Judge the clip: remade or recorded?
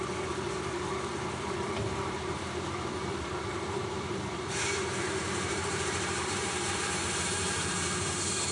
remade